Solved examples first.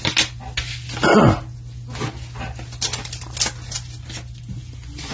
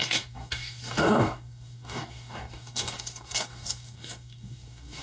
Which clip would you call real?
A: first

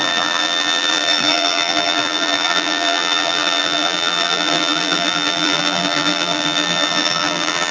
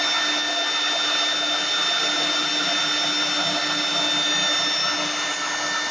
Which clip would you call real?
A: second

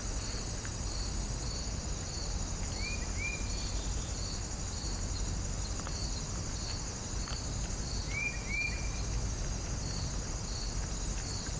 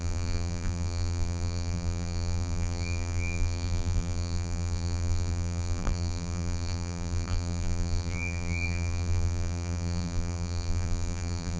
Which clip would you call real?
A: first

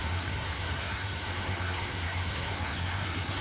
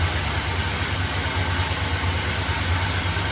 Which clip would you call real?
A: second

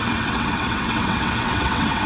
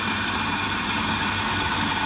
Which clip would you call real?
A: second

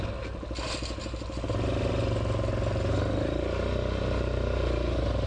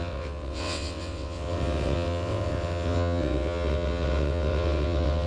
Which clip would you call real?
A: first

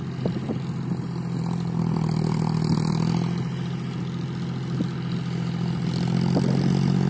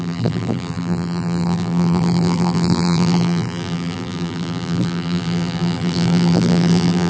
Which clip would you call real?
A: first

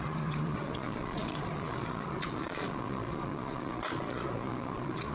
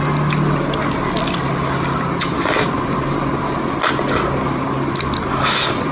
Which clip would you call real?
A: second